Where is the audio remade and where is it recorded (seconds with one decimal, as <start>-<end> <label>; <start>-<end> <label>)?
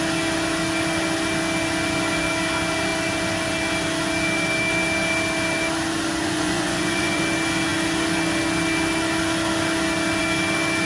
0.0-6.2 recorded; 6.2-7.2 remade; 7.2-10.9 recorded